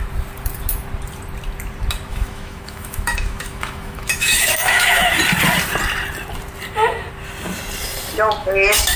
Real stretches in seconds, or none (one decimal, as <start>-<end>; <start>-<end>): 0.0-2.1; 5.2-8.4